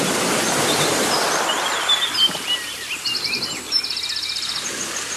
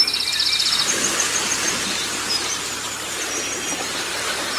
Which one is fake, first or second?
first